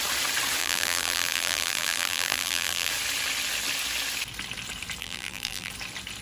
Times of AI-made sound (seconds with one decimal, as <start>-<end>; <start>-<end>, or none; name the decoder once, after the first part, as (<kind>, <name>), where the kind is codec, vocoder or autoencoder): 0.6-2.9 (vocoder, BigVGAN v2); 5.0-5.7